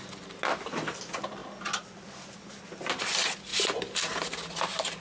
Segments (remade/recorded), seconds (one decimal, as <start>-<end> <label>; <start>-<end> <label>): 0.0-5.0 recorded